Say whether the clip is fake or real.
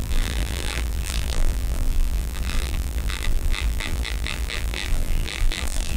fake